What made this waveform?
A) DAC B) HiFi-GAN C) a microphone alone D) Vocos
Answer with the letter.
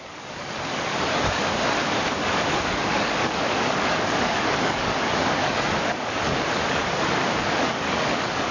A